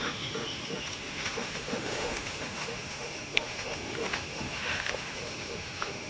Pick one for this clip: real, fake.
fake